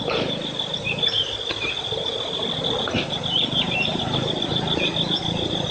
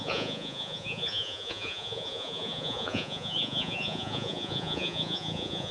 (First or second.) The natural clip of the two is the first